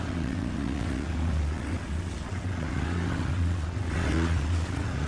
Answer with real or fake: fake